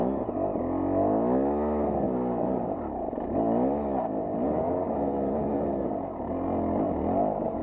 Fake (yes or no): no